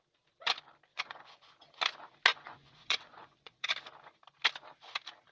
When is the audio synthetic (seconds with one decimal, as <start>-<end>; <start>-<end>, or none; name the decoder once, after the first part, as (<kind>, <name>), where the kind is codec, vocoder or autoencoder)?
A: 0.9-1.4 (vocoder, Vocos); 2.3-3.7